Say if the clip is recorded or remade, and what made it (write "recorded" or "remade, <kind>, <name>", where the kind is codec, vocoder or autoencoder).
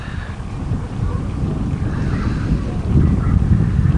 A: recorded